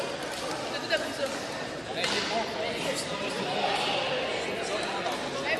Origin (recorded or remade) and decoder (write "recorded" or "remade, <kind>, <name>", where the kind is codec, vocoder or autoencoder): recorded